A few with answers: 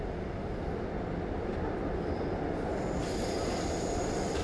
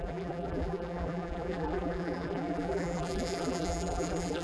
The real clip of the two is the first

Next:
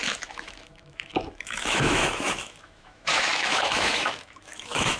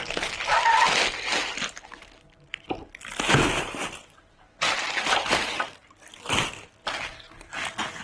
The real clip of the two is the second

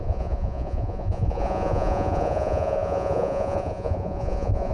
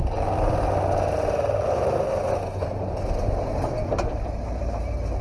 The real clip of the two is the second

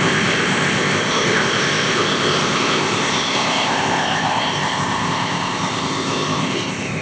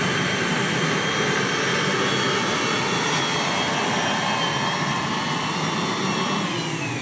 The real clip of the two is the second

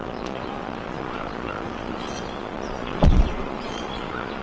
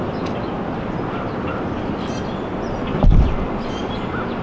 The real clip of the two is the second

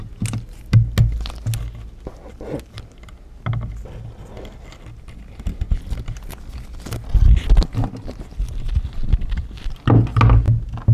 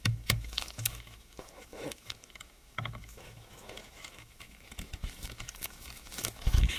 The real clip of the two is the first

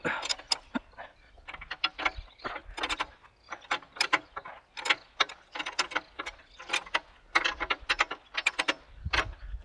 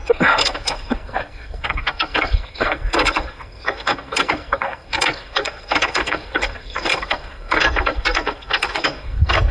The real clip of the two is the first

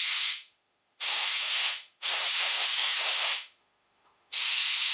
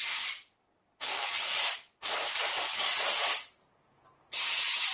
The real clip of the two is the second